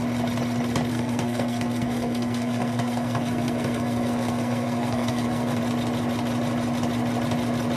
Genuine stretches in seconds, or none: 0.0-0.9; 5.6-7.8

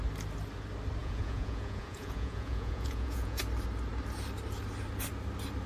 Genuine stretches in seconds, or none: 0.0-1.0; 3.4-5.7